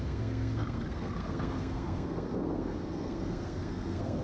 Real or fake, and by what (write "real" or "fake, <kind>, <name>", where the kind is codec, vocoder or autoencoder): fake, codec, SNAC